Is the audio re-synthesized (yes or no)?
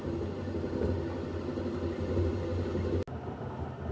no